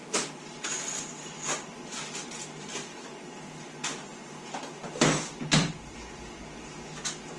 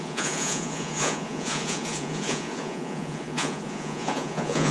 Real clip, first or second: first